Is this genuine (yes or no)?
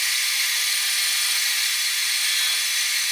no